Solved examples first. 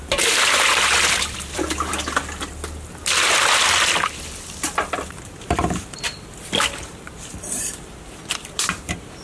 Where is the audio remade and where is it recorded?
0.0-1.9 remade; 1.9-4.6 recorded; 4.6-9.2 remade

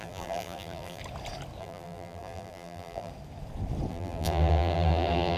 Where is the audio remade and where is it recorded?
0.0-1.0 remade; 1.0-1.6 recorded; 1.6-3.1 remade; 3.1-3.9 recorded; 3.9-5.4 remade

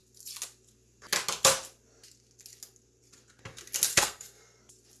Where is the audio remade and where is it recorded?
0.0-3.9 recorded; 3.9-4.6 remade; 4.6-5.0 recorded

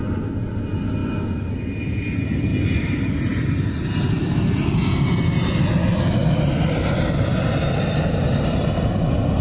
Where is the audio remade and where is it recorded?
0.0-2.5 recorded; 2.5-4.9 remade; 4.9-9.4 recorded

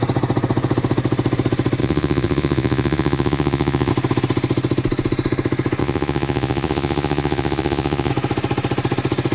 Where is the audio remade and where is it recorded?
0.0-1.8 recorded; 1.8-3.9 remade; 3.9-5.8 recorded; 5.8-8.1 remade; 8.1-9.3 recorded

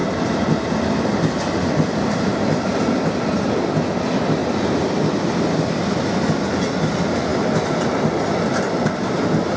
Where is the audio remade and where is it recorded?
0.0-3.1 remade; 3.1-4.4 recorded; 4.4-5.9 remade; 5.9-9.6 recorded

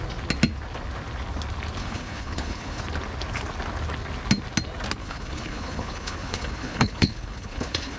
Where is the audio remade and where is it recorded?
0.0-1.8 recorded; 1.8-2.8 remade; 2.8-5.0 recorded; 5.0-8.0 remade